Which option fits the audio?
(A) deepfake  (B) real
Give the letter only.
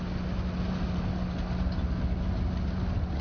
B